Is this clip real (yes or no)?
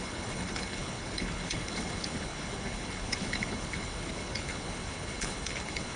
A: no